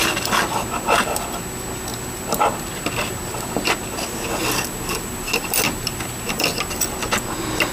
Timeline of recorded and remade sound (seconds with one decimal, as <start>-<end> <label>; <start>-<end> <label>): 0.0-7.7 recorded